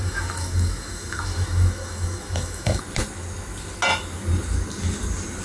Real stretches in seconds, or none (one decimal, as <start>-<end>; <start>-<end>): 2.8-5.4